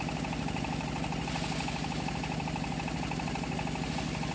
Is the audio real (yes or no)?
yes